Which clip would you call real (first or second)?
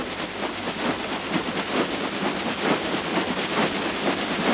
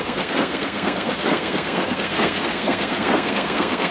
first